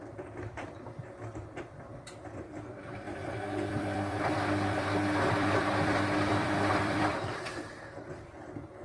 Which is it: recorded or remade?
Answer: remade